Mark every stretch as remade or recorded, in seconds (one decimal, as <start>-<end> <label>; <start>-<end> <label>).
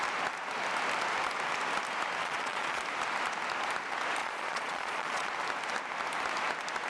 0.0-2.2 recorded; 2.2-2.8 remade; 2.8-4.2 recorded; 4.2-5.3 remade; 5.3-6.9 recorded